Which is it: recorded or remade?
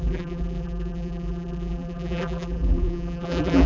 remade